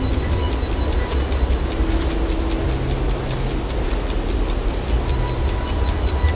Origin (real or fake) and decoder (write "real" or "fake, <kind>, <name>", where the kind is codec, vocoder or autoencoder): real